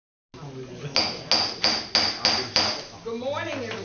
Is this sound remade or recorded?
recorded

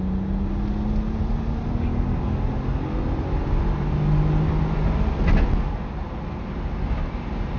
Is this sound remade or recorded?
recorded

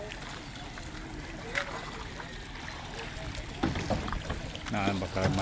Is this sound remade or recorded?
recorded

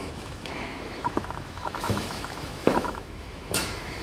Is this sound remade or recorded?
remade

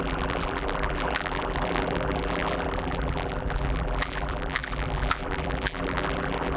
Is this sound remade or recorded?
remade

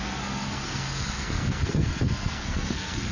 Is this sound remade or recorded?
remade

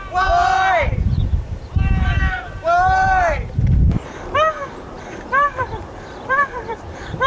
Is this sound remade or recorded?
remade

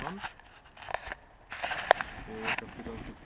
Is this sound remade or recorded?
recorded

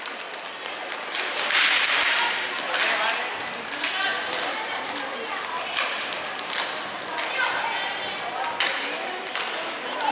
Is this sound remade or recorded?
recorded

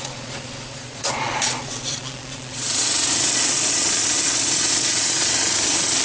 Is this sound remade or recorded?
remade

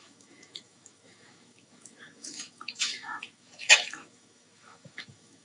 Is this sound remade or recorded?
remade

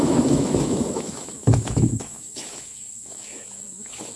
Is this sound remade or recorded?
remade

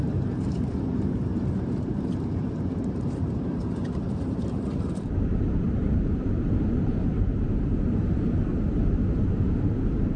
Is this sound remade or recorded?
remade